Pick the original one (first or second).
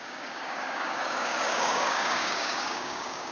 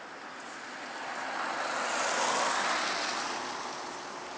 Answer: second